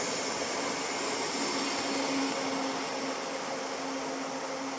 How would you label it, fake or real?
real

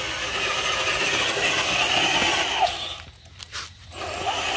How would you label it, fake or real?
real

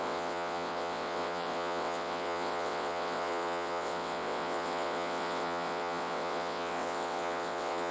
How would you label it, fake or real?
fake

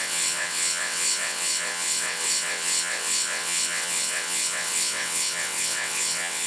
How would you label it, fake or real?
fake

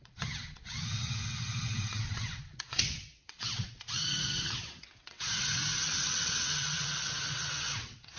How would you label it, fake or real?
fake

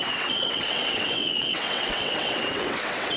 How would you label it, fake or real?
fake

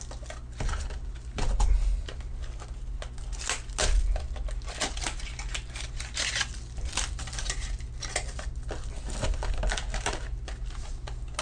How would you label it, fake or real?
real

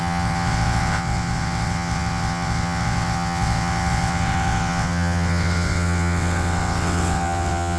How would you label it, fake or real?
fake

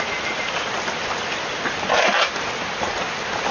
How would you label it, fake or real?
real